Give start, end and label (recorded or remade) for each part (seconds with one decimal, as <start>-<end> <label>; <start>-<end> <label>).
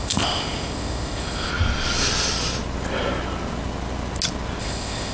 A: 0.0-1.5 remade; 1.5-4.6 recorded; 4.6-5.1 remade